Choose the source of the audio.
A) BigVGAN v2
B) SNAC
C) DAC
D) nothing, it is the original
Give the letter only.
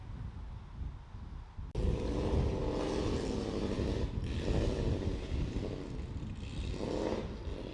D